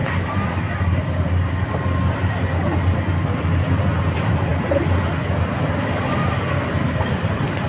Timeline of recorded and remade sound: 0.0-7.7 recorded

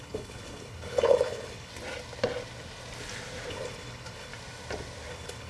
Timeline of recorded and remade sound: 0.0-1.7 remade; 1.7-3.5 recorded; 3.5-4.3 remade; 4.3-5.1 recorded; 5.1-5.5 remade

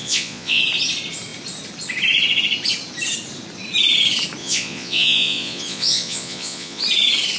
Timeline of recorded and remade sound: 0.0-0.6 remade; 0.6-4.4 recorded; 4.4-6.8 remade; 6.8-7.4 recorded